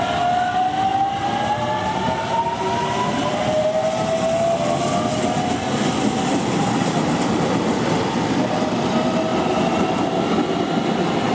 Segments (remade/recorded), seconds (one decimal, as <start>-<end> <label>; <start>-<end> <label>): 0.0-11.3 recorded